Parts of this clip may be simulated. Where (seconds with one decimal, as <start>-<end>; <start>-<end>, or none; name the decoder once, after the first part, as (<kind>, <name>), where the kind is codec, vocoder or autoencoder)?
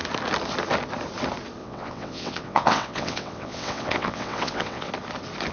1.6-4.9 (vocoder, WaveNeXt)